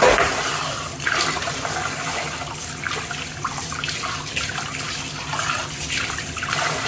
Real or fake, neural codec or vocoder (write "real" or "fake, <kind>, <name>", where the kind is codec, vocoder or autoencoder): real